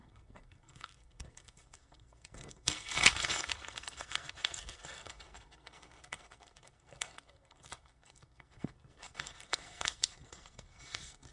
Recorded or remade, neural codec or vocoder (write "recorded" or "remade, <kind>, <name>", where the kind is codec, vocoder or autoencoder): remade, codec, SNAC